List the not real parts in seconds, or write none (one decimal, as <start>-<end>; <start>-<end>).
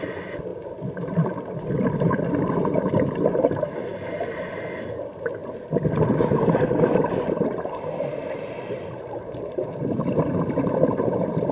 0.0-3.9; 5.0-5.4; 6.5-11.5